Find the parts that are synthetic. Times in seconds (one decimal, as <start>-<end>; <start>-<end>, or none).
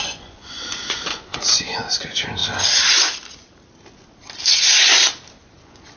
0.0-2.4; 5.4-6.0